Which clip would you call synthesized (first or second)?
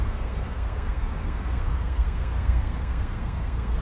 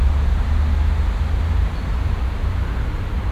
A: first